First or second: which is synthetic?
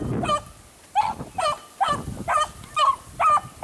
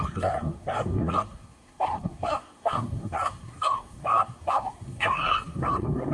second